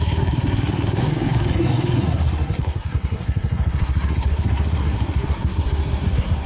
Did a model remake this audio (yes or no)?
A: yes